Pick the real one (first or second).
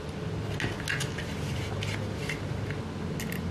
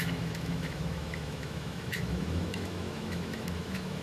first